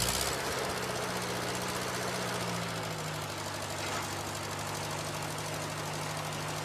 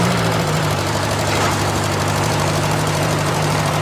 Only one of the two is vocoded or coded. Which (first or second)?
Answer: second